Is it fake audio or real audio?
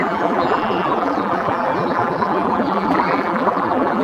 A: fake